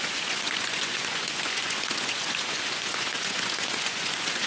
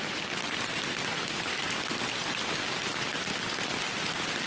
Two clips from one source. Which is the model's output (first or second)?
first